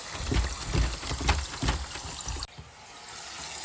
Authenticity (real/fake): real